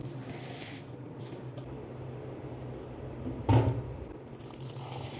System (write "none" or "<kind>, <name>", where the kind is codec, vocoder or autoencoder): none